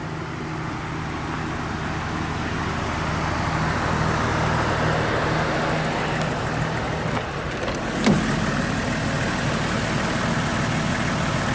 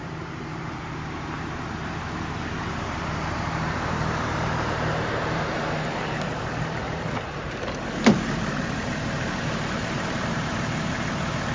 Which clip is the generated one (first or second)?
second